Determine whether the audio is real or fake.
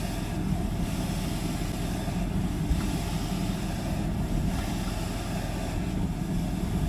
real